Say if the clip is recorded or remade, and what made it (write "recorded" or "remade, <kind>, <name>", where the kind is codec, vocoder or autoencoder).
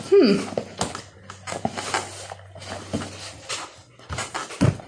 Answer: recorded